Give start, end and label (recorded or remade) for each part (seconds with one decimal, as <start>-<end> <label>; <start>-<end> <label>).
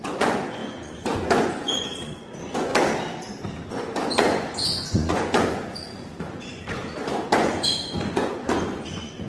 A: 0.0-2.7 remade; 2.7-3.7 recorded; 3.7-9.3 remade